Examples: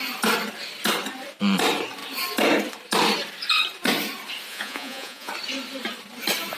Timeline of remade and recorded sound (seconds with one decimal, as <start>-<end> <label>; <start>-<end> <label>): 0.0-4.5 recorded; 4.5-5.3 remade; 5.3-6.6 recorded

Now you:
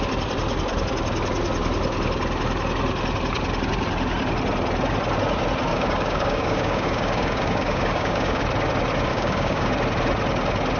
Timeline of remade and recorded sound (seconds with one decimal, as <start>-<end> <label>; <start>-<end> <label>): 0.0-5.7 recorded; 5.7-8.4 remade; 8.4-9.1 recorded; 9.1-9.7 remade; 9.7-10.8 recorded

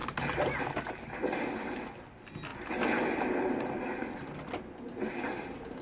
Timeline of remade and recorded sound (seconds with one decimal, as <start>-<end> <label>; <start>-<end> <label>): 0.0-5.8 recorded

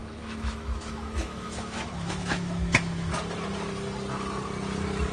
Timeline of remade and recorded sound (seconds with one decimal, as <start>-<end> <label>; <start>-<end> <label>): 0.0-3.1 remade; 3.1-5.1 recorded

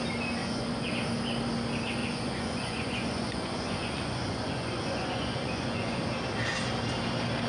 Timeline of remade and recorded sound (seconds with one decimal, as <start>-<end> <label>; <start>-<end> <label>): 0.0-0.4 recorded; 0.4-0.9 remade; 0.9-2.0 recorded; 2.0-6.0 remade; 6.0-7.5 recorded

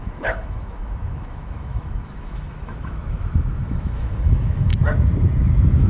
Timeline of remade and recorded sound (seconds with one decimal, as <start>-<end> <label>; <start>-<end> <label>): 0.0-4.7 remade; 4.7-5.9 recorded

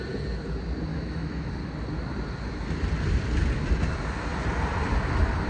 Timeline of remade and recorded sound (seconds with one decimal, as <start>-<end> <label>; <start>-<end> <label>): 0.0-0.9 recorded; 0.9-1.5 remade; 1.5-5.5 recorded